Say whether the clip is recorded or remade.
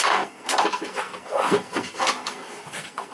remade